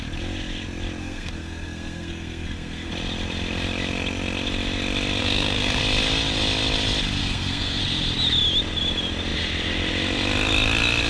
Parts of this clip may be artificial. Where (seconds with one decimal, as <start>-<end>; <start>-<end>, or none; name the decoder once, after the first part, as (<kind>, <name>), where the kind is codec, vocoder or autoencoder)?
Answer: 1.0-2.9 (codec, SNAC); 5.2-5.8; 7.2-7.8